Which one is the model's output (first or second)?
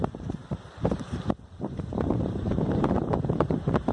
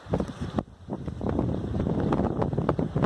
first